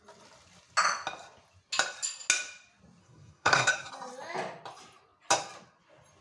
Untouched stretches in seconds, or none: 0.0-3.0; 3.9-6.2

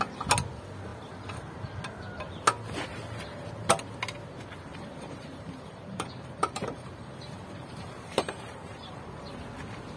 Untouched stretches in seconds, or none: 0.0-4.7; 9.4-10.0

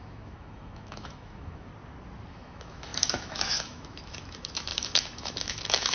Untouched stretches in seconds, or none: 1.7-2.3

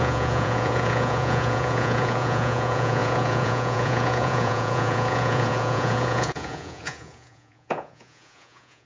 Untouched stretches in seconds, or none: none

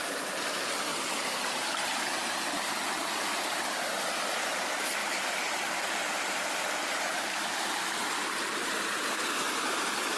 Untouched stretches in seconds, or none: 0.0-0.9; 2.5-5.0; 7.3-10.2